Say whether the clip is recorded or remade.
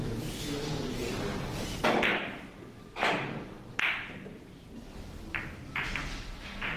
recorded